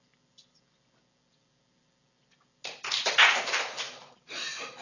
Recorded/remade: recorded